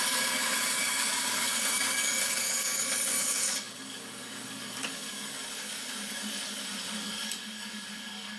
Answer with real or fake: fake